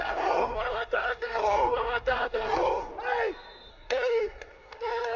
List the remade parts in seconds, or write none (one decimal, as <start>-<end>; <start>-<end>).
0.0-2.9; 3.7-5.2